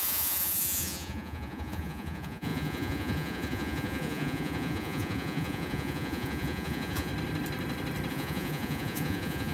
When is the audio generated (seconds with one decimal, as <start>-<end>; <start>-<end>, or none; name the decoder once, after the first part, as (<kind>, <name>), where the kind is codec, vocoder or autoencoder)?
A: 0.0-7.1 (vocoder, Vocos); 8.1-9.5

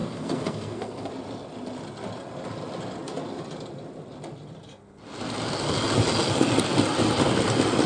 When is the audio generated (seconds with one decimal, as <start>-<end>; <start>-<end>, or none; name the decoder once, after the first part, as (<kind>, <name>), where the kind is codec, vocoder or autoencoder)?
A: 0.0-1.1 (codec, SNAC)

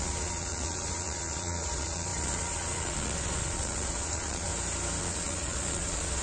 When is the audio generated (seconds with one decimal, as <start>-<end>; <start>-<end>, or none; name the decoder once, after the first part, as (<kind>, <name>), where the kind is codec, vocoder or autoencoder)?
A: 0.0-4.5 (vocoder, Vocos); 5.0-6.2

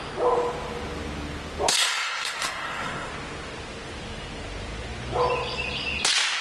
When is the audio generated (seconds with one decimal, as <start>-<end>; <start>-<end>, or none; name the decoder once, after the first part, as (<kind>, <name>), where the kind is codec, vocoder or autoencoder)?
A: 1.7-3.1 (codec, SNAC)